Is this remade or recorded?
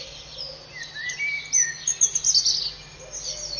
recorded